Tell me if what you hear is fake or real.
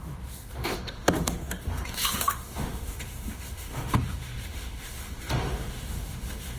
fake